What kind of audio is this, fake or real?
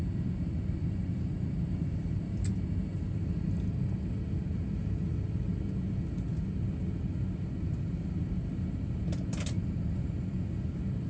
real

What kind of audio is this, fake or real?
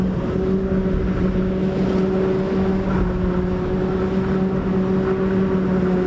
real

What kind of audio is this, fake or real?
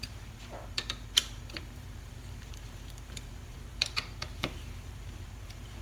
fake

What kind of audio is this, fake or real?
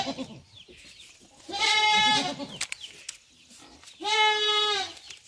real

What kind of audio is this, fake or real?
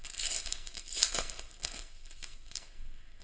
fake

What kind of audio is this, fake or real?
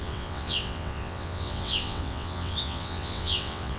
fake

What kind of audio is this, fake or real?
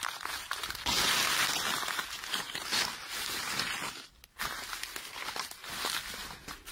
real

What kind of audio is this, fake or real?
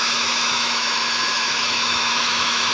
fake